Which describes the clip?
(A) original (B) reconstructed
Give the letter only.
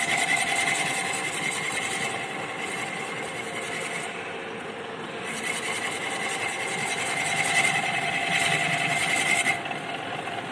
A